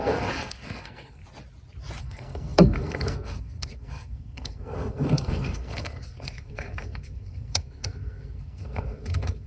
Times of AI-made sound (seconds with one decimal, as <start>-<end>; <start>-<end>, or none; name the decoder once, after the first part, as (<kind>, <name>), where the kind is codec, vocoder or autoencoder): 0.0-1.2 (codec, SNAC); 2.0-9.5